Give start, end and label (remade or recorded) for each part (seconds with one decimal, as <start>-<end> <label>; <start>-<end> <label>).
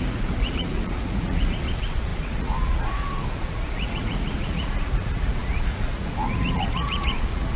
0.0-7.6 remade